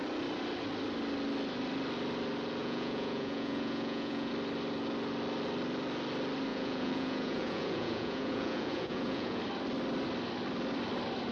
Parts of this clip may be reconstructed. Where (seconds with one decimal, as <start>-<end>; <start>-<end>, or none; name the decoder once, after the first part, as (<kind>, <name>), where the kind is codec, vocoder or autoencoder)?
2.6-4.3 (vocoder, Vocos); 6.5-9.4

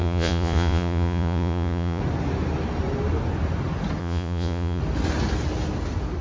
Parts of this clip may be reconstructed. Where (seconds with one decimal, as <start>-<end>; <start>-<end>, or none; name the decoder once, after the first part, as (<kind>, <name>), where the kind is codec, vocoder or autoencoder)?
0.0-2.0 (vocoder, Vocos); 4.0-4.8

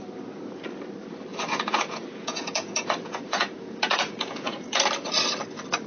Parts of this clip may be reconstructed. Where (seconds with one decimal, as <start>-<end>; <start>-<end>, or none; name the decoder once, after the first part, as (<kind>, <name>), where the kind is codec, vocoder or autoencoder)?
1.3-4.8 (vocoder, Vocos)

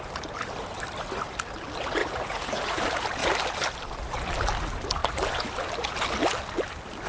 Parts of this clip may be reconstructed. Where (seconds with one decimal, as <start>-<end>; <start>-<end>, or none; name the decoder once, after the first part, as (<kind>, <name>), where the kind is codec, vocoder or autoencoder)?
2.0-2.8 (vocoder, Vocos)

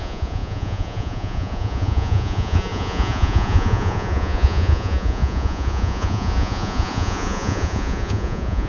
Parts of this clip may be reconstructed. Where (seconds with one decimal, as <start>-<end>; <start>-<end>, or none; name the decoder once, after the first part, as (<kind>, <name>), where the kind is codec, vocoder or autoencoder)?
0.0-8.7 (vocoder, Vocos)

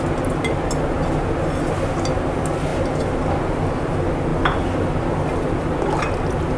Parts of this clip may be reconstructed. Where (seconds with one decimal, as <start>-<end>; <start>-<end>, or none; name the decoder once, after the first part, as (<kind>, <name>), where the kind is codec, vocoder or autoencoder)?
none

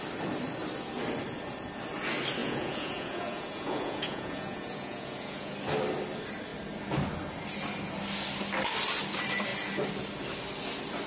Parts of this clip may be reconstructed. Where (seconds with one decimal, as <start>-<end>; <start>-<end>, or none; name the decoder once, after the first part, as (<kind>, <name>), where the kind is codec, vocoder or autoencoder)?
2.4-5.5 (vocoder, Vocos)

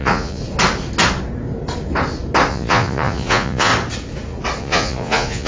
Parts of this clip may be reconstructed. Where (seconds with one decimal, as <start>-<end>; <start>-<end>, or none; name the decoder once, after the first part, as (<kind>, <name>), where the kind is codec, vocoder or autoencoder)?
0.0-0.4 (vocoder, Vocos); 2.5-3.7; 4.6-5.5